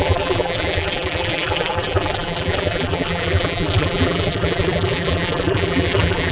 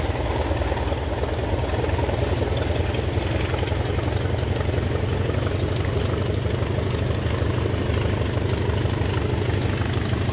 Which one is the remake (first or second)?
first